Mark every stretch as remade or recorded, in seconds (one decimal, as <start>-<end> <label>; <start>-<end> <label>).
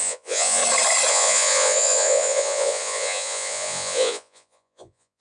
0.0-0.6 remade; 0.6-1.1 recorded; 1.1-5.2 remade